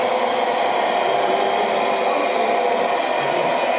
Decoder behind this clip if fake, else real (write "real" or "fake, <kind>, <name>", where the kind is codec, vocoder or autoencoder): real